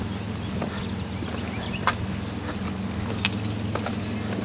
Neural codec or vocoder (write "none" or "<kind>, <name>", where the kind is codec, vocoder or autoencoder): none